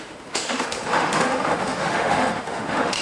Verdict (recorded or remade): remade